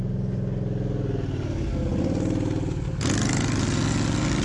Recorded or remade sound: recorded